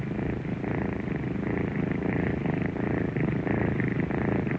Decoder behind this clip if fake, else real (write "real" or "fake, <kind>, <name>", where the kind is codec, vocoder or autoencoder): real